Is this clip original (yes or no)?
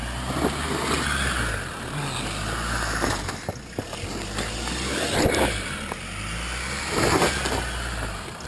yes